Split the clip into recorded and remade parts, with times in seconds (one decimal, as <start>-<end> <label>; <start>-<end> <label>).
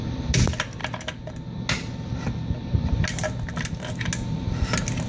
0.0-5.1 recorded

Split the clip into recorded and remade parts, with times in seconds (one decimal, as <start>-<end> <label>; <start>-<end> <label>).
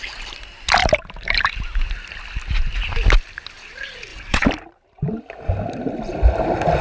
0.0-0.8 recorded; 0.8-1.9 remade; 1.9-4.1 recorded; 4.1-5.2 remade; 5.2-6.8 recorded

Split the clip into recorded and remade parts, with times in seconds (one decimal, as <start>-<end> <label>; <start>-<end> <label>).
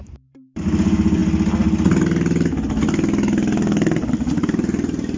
0.0-1.2 remade; 1.2-4.3 recorded; 4.3-5.2 remade